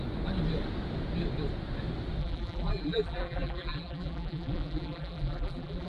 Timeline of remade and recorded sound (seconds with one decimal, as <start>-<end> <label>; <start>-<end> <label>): 0.0-2.2 recorded; 2.2-5.9 remade